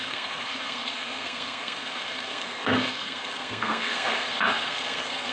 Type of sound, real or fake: fake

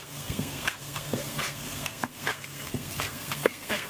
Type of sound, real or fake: fake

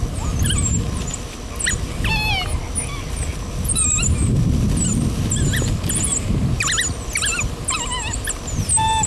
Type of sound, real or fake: real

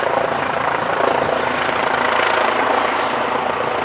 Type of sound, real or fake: real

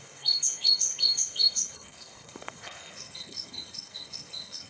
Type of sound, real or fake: fake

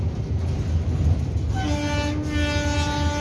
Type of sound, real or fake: real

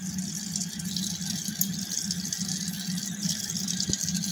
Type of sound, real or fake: real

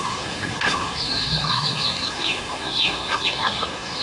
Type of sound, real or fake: fake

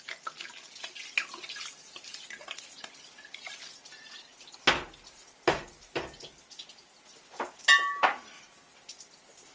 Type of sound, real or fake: real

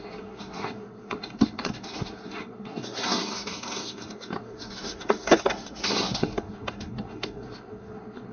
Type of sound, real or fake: fake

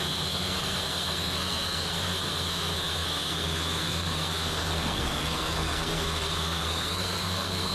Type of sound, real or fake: fake